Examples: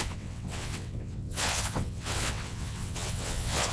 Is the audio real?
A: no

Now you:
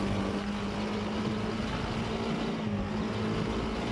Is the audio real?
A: yes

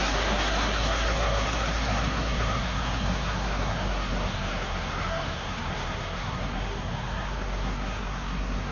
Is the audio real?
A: no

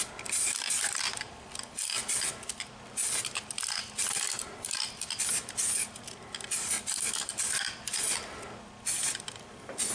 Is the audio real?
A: yes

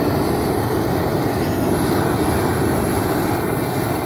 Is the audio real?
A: yes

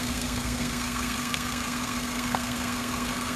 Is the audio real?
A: no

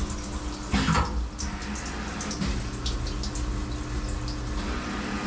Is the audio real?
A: yes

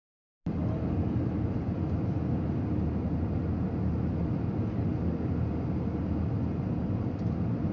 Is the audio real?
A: yes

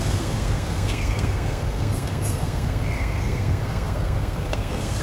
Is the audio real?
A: no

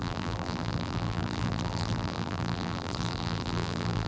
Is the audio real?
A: no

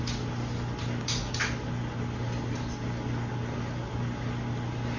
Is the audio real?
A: yes